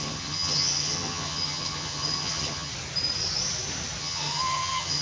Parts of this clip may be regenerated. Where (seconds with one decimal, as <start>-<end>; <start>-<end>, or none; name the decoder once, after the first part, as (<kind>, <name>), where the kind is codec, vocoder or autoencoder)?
0.0-2.7 (vocoder, HiFi-GAN); 4.0-5.0